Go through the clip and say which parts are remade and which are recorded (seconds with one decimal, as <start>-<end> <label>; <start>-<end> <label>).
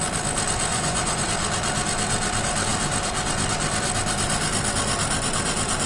0.0-0.7 recorded; 0.7-1.2 remade; 1.2-5.9 recorded